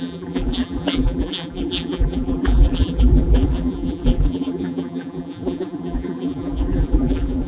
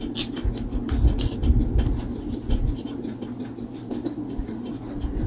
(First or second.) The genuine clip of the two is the second